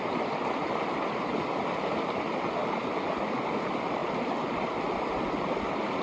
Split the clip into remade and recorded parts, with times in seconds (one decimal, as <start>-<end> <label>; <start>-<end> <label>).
0.0-2.6 recorded; 2.6-3.5 remade; 3.5-6.0 recorded